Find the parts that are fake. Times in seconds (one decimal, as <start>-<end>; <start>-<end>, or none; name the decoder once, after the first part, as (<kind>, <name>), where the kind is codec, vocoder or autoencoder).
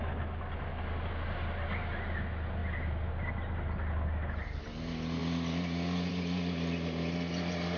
none